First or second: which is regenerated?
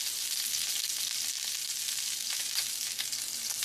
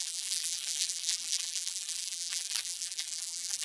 second